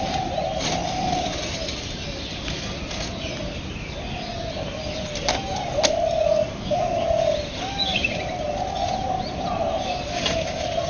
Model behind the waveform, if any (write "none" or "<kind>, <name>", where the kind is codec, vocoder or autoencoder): none